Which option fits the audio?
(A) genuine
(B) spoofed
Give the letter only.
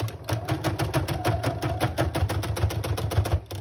A